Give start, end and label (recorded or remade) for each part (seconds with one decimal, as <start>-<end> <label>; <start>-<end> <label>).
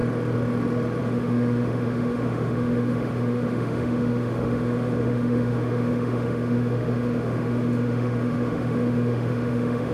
0.0-1.0 recorded; 1.0-9.9 remade